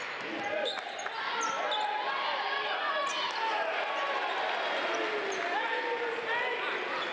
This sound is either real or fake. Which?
real